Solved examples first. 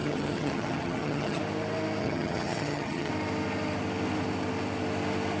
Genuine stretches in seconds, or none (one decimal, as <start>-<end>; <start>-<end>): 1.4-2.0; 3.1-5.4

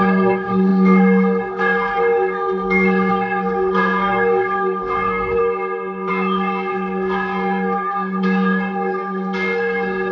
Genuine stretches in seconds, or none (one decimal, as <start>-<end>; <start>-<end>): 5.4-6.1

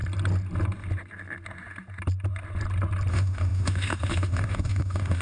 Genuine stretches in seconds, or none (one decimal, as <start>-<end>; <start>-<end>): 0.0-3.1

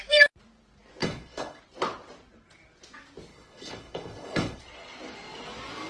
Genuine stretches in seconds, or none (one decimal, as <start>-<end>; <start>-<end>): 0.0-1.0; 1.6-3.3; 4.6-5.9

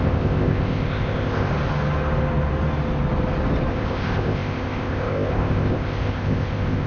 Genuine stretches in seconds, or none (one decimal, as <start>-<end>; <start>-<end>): 1.5-3.7

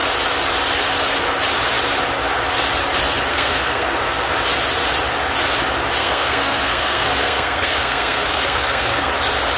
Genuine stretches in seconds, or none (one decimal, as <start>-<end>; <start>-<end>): 0.0-3.3; 4.3-6.0; 9.1-9.6